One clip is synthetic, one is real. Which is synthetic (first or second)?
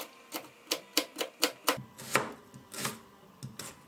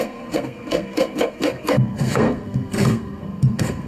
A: second